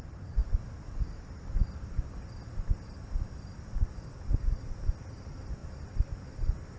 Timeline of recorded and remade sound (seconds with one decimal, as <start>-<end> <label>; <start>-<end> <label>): 0.0-6.8 recorded